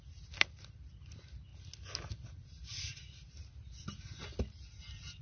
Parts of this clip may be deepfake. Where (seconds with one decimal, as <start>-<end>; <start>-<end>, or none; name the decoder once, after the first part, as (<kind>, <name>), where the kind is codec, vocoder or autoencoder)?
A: none